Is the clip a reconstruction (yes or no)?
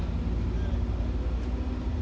no